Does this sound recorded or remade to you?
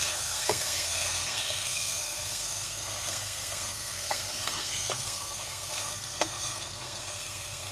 remade